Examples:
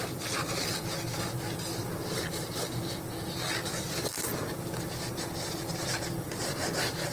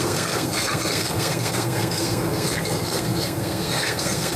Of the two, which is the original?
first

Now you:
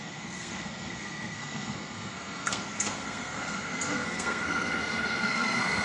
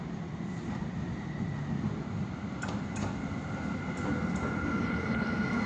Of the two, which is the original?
second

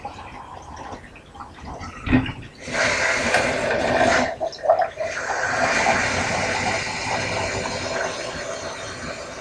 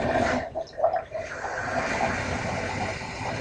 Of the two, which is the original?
first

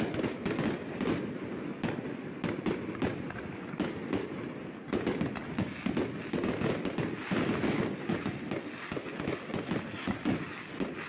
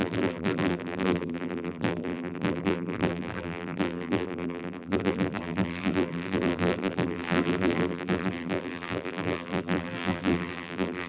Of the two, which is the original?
first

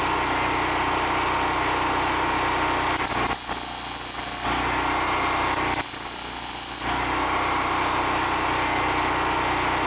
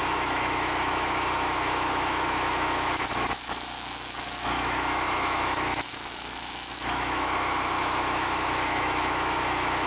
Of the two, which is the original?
first